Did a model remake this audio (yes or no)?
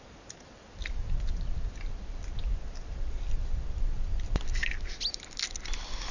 no